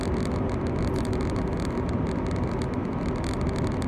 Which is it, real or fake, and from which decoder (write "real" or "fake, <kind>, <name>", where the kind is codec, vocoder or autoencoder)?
real